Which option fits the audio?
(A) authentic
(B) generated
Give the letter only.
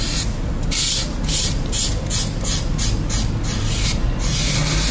A